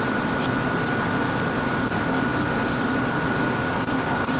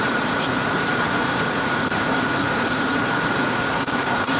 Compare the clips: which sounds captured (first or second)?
first